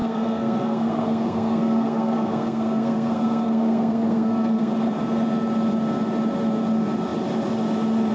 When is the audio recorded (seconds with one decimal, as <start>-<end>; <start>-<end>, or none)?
4.7-8.1